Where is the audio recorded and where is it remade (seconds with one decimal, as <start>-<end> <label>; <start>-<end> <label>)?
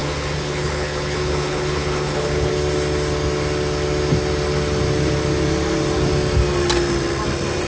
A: 0.0-2.5 remade; 2.5-7.7 recorded